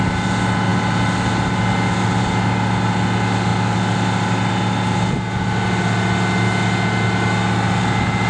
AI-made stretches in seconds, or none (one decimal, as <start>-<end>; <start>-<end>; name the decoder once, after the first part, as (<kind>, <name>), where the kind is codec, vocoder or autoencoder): none